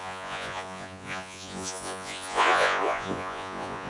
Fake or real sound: fake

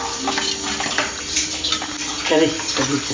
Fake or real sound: real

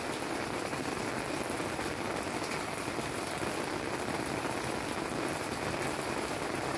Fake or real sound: real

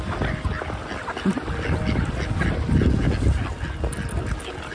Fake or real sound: real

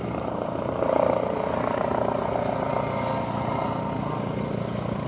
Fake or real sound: real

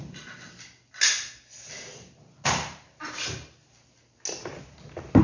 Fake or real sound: real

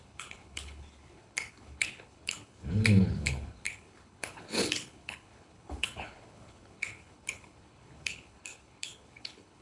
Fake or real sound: fake